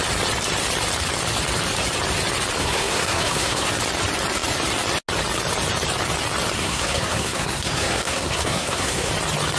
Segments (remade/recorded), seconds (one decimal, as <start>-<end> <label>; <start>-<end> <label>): 0.0-2.6 recorded; 2.6-3.7 remade; 3.7-6.6 recorded; 6.6-9.1 remade; 9.1-9.6 recorded